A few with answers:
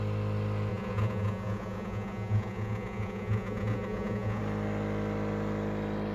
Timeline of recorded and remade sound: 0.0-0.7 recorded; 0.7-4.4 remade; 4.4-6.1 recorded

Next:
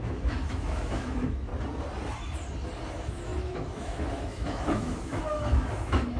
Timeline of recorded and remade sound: 0.0-1.5 remade; 1.5-2.9 recorded; 2.9-6.2 remade

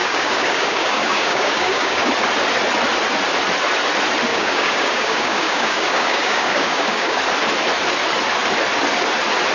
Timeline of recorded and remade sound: 0.0-2.1 remade; 2.1-4.3 recorded; 4.3-7.2 remade; 7.2-9.5 recorded

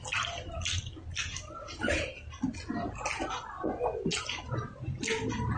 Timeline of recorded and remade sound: 0.0-5.6 recorded

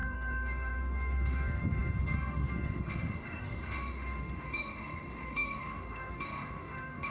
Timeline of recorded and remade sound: 0.0-7.1 remade

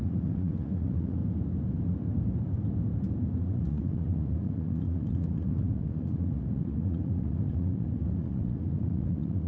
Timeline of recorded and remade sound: 0.0-1.2 remade; 1.2-3.4 recorded; 3.4-9.5 remade

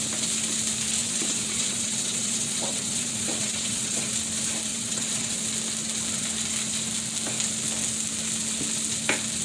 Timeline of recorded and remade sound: 0.0-1.0 recorded; 1.0-4.1 remade; 4.1-4.7 recorded; 4.7-5.4 remade; 5.4-9.4 recorded